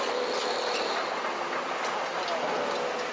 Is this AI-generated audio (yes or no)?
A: no